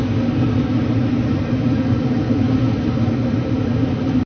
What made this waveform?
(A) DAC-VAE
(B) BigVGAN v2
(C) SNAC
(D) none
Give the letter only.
D